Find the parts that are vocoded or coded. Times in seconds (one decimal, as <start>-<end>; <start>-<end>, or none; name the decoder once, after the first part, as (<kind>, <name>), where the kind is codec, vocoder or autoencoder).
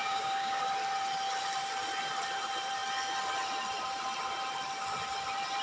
0.0-0.6 (codec, DAC)